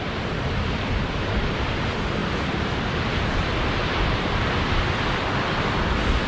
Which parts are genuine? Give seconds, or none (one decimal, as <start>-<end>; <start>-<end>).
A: 0.0-6.3